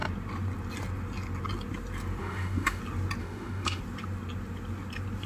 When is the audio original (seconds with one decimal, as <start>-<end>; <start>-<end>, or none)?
0.0-2.2; 2.8-3.2; 3.8-5.3